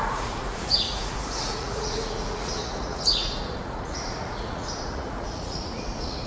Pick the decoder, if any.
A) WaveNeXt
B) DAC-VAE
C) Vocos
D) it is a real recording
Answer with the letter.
C